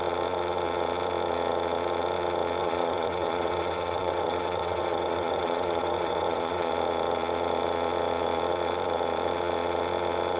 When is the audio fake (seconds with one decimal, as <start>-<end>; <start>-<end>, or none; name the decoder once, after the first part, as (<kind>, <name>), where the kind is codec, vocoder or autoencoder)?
2.6-6.7 (vocoder, WaveNeXt)